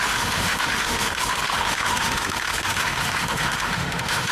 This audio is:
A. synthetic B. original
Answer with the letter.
A